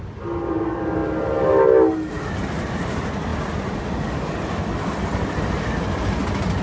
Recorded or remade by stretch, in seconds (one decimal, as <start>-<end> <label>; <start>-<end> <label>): 0.0-6.6 recorded